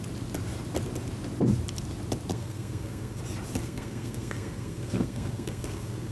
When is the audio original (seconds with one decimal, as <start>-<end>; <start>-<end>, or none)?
0.0-2.3; 3.2-3.6